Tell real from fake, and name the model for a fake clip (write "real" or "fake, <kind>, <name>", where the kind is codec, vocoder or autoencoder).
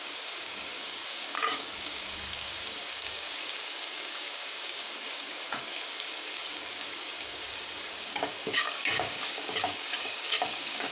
fake, codec, DAC